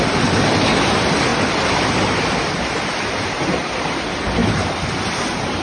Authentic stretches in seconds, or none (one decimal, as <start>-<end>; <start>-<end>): 0.0-5.6